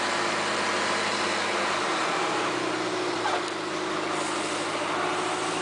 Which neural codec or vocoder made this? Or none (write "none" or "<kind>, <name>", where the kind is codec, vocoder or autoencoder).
none